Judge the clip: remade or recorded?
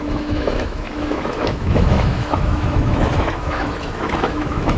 remade